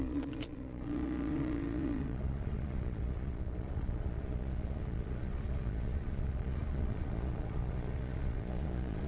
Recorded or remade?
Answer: remade